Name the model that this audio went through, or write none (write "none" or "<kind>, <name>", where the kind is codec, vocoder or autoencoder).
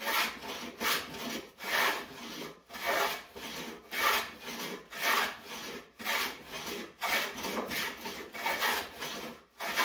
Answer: none